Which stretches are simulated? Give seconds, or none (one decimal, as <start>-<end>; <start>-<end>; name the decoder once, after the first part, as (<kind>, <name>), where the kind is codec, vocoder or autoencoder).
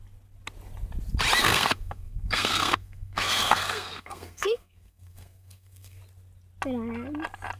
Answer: 1.4-6.0 (codec, SNAC)